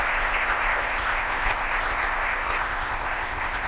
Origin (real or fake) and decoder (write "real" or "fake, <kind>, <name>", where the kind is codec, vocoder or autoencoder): fake, codec, ZipCodec